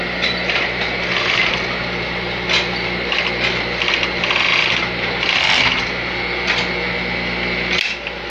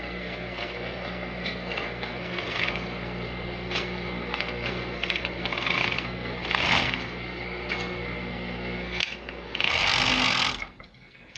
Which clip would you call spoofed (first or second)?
second